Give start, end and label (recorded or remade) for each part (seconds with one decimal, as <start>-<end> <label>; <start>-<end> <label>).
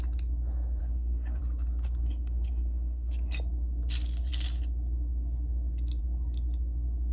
0.0-0.8 recorded; 0.8-1.4 remade; 1.4-2.0 recorded; 2.0-3.1 remade; 3.1-7.1 recorded